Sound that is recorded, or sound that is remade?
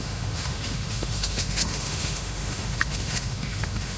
remade